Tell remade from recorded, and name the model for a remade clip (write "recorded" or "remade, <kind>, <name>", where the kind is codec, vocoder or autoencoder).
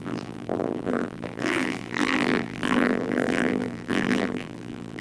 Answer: remade, vocoder, BigVGAN v2